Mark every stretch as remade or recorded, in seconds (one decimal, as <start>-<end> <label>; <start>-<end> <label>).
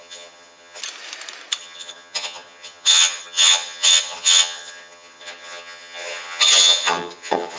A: 0.0-0.8 remade; 0.8-1.6 recorded; 1.6-7.6 remade